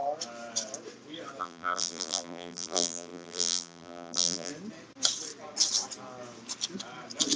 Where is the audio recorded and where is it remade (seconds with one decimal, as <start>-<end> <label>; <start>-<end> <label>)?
0.0-1.4 recorded; 1.4-4.5 remade; 4.5-7.4 recorded

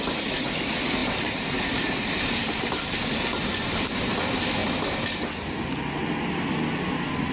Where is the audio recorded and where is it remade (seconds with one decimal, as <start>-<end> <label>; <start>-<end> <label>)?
0.0-1.0 recorded; 1.0-2.6 remade; 2.6-7.3 recorded

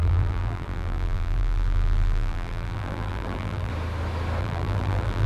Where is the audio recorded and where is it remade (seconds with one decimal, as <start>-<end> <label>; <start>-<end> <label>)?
0.0-3.7 remade; 3.7-4.4 recorded; 4.4-5.3 remade

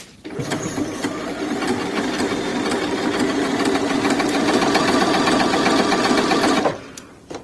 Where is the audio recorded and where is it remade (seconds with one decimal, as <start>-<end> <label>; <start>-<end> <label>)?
0.0-2.5 remade; 2.5-6.6 recorded; 6.6-7.4 remade

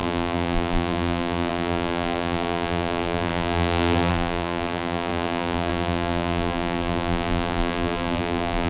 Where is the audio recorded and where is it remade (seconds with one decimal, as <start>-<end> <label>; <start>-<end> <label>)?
0.0-8.7 remade

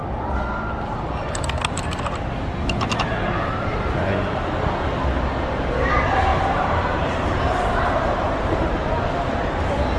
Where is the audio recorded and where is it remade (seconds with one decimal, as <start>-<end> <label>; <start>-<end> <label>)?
0.0-1.2 recorded; 1.2-2.1 remade; 2.1-6.3 recorded; 6.3-8.6 remade; 8.6-10.0 recorded

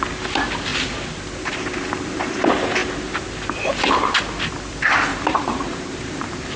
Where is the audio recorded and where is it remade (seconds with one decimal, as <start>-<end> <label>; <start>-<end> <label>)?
0.0-5.1 recorded; 5.1-6.6 remade